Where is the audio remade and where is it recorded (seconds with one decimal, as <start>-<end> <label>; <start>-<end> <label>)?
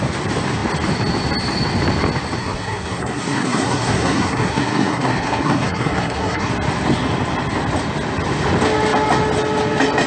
0.0-2.4 recorded; 2.4-6.5 remade; 6.5-10.1 recorded